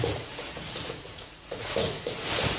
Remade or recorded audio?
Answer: remade